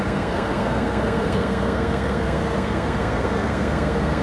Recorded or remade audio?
remade